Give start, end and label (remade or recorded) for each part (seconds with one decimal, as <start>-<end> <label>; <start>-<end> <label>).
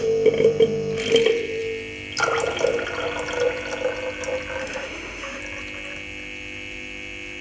0.0-4.6 recorded; 4.6-5.4 remade; 5.4-7.4 recorded